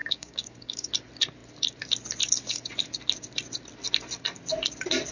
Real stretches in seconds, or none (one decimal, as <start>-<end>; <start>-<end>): 0.9-5.1